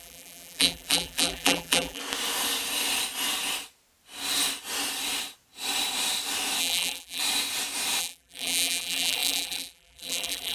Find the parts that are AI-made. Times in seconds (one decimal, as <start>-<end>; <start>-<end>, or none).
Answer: 0.0-2.0; 6.6-7.2; 8.0-10.5